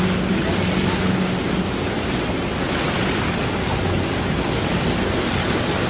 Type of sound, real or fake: real